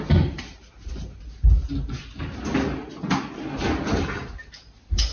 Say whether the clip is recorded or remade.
recorded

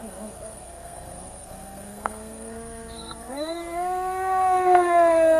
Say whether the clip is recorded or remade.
remade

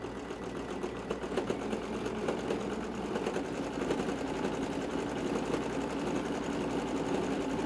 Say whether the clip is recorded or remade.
remade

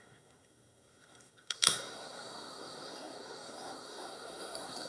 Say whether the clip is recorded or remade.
remade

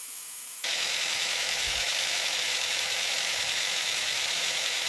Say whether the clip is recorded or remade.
remade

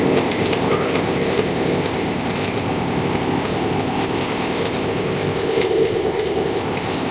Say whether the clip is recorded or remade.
remade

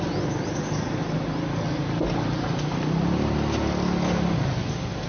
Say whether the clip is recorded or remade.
recorded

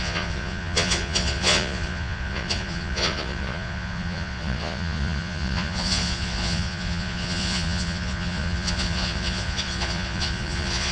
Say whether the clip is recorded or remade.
remade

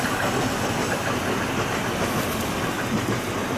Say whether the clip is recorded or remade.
recorded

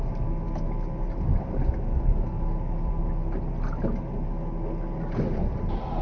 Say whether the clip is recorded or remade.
recorded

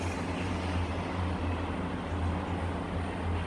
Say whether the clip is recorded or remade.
recorded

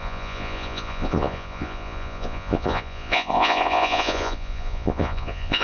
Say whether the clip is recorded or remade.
remade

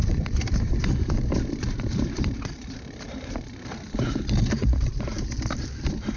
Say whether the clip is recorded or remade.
remade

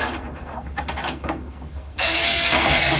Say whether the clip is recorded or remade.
remade